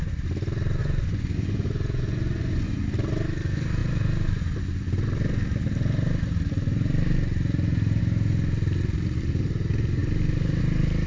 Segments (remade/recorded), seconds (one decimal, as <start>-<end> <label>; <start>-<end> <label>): 0.0-0.8 recorded; 0.8-2.8 remade; 2.8-11.1 recorded